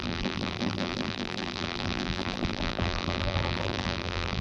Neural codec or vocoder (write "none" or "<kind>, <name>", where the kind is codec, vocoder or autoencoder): vocoder, BigVGAN v2